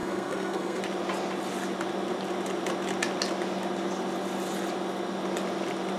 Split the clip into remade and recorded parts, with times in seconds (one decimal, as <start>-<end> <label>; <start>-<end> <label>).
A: 0.0-0.8 remade; 0.8-6.0 recorded